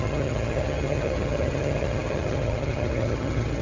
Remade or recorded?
remade